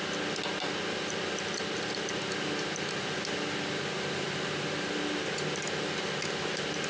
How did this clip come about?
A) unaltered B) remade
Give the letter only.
A